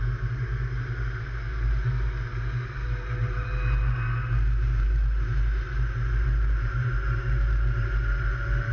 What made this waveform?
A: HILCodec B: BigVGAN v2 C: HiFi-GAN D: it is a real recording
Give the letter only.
D